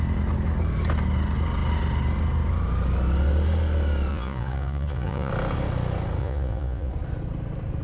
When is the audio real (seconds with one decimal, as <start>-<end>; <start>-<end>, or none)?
0.0-4.1; 5.3-6.2; 6.9-7.8